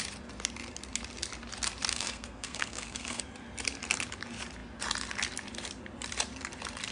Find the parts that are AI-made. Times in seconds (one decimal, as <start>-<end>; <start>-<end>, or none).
1.9-3.2